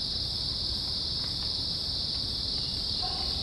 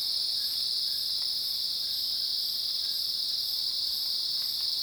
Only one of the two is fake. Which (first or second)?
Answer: first